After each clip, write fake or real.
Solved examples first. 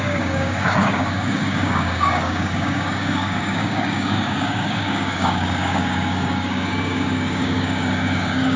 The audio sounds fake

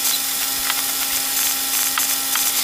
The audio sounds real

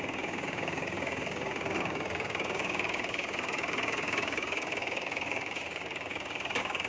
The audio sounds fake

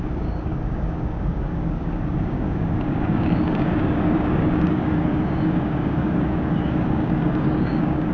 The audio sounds fake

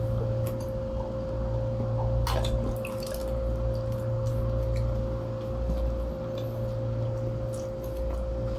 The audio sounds real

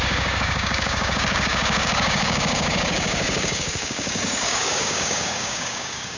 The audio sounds fake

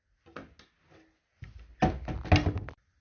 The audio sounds real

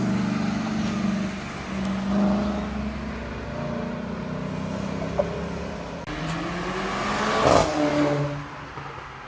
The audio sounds real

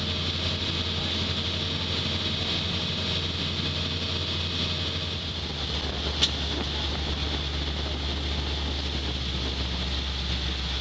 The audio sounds real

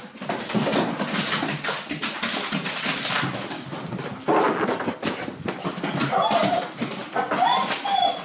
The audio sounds real